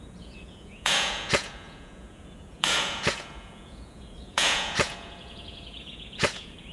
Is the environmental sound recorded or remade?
remade